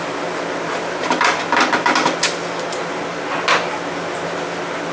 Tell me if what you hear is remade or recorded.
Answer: recorded